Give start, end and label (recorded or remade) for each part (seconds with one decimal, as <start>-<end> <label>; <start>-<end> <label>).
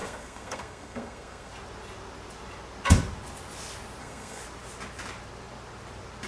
0.0-1.5 remade; 1.5-4.0 recorded; 4.0-4.4 remade; 4.4-6.3 recorded